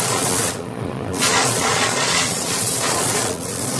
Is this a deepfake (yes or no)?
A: yes